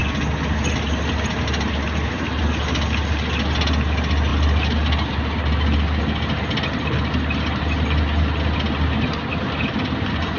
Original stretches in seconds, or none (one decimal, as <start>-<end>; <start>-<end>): 0.0-10.4